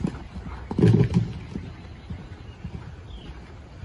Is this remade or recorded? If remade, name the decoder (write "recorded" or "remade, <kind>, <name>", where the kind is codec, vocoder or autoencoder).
recorded